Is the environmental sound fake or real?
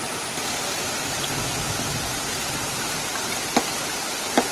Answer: real